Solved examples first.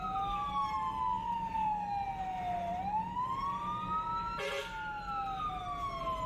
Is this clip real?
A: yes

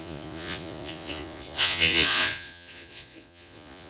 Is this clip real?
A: no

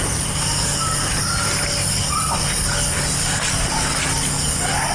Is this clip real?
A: yes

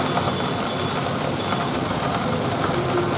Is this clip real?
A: yes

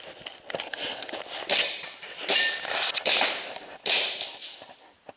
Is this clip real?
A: yes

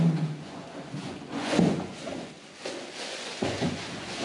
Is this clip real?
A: no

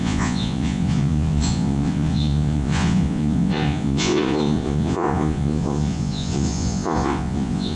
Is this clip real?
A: no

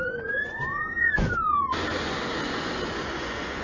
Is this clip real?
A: no